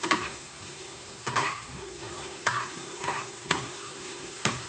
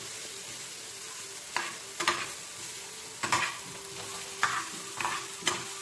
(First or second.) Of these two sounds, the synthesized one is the first